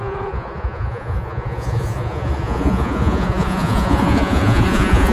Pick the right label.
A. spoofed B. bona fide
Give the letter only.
A